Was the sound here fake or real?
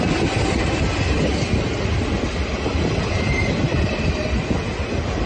real